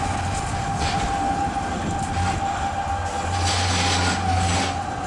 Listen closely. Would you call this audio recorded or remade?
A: recorded